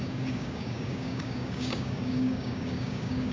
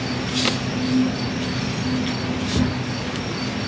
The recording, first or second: second